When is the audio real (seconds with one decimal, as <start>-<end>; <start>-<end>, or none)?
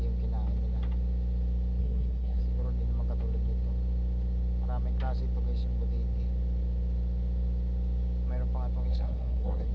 0.0-1.8; 2.4-8.9